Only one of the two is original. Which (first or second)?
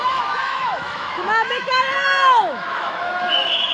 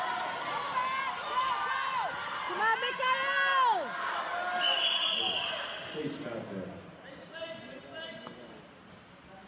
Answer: second